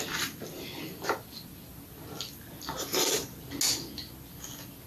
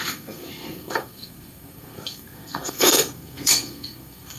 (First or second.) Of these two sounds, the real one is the first